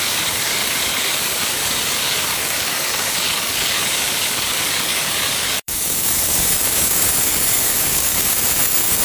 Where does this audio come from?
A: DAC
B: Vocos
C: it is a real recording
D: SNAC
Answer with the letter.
A